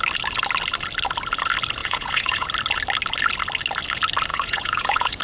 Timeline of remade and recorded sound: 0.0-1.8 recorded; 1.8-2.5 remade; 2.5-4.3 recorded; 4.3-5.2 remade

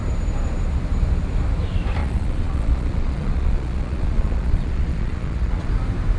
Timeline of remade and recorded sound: 0.0-2.0 recorded; 2.0-5.7 remade; 5.7-6.2 recorded

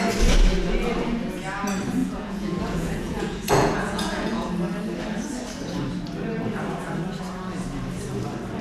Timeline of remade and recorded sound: 0.0-2.0 recorded; 2.0-4.5 remade; 4.5-8.6 recorded

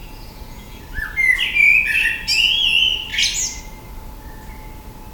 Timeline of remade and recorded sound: 0.0-0.8 remade; 0.8-5.1 recorded

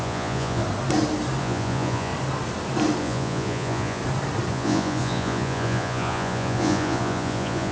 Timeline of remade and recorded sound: 0.0-0.6 remade; 0.6-1.4 recorded; 1.4-2.1 remade; 2.1-3.0 recorded; 3.0-4.0 remade; 4.0-4.5 recorded; 4.5-7.7 remade

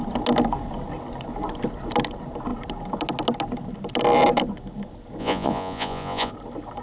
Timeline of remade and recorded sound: 0.0-5.2 recorded; 5.2-6.3 remade; 6.3-6.8 recorded